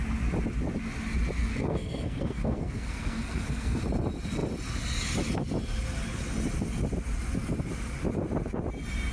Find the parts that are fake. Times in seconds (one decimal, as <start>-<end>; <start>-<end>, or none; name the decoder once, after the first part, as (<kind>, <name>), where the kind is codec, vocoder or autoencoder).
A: 1.5-3.8 (codec, SNAC)

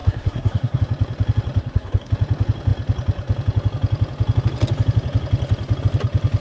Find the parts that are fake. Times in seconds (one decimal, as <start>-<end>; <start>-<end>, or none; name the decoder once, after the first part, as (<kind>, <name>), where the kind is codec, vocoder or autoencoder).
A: 0.0-0.8 (codec, SNAC); 1.6-2.1

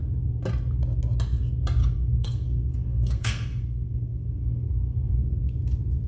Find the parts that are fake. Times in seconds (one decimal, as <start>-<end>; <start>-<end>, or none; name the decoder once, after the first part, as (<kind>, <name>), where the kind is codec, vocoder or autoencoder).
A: 1.8-5.4 (codec, SNAC)

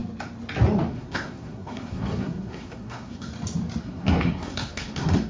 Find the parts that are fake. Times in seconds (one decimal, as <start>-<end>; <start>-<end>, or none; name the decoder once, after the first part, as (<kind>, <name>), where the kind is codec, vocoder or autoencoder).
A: 0.9-3.3 (codec, SNAC); 3.8-5.3

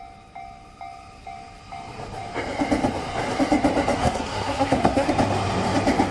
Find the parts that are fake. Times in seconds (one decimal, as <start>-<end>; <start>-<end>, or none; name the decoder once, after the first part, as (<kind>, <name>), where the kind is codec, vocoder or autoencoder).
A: 4.0-5.1 (codec, SNAC)